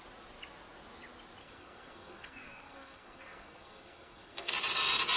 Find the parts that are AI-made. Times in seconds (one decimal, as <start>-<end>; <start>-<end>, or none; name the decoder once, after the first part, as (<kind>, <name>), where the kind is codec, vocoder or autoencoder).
1.4-4.5 (codec, SNAC)